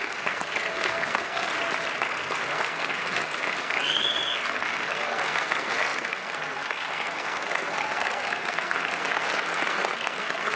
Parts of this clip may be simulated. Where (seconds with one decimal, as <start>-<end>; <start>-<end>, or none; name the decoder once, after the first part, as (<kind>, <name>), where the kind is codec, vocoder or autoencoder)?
0.0-1.5 (codec, SNAC); 2.0-10.6